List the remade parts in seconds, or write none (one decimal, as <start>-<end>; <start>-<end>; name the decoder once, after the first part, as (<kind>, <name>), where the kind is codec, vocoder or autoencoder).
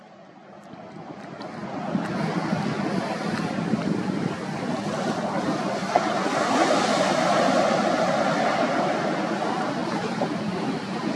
none